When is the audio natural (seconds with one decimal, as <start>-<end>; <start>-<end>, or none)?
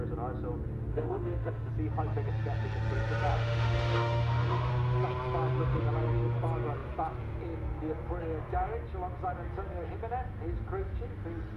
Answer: 0.0-0.9; 1.7-3.3; 4.7-11.6